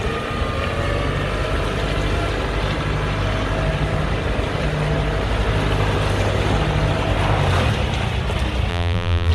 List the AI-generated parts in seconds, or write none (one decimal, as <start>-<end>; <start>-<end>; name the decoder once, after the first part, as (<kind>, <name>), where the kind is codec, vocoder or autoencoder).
8.7-9.3 (vocoder, BigVGAN v2)